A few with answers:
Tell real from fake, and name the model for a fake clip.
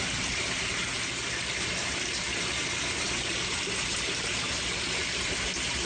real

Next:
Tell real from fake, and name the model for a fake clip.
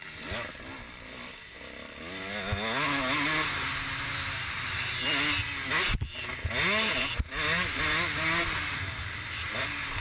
real